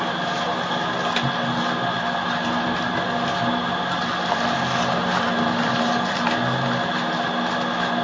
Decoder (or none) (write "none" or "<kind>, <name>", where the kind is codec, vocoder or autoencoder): none